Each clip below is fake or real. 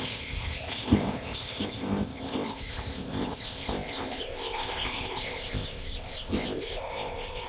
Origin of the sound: fake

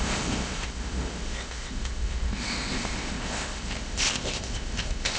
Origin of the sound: fake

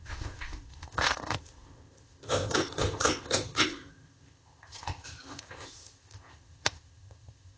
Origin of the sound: fake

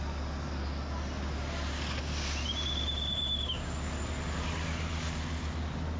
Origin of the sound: real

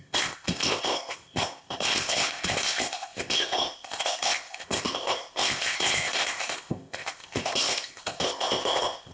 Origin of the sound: fake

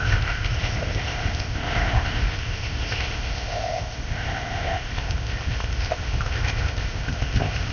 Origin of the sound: fake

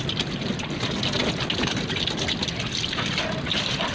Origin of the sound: real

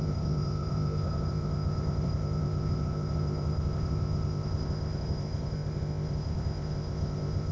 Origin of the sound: fake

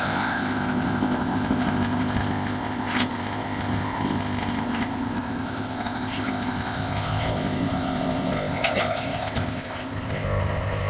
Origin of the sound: fake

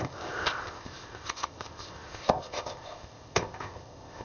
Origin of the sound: fake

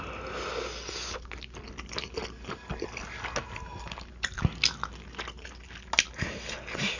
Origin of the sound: real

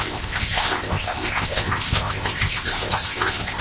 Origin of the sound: fake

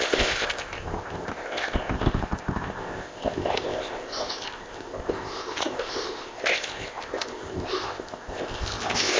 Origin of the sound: fake